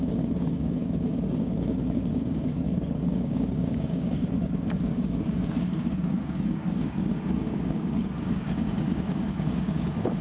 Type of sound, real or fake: fake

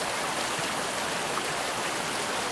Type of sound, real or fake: real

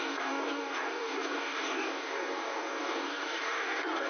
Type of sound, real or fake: fake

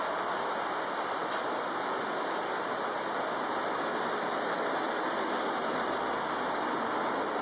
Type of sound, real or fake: real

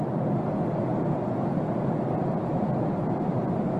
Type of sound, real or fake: real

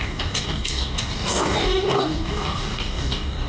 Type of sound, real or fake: fake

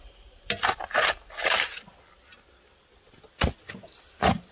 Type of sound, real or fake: real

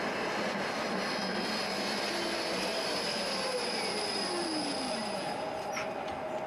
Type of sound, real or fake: real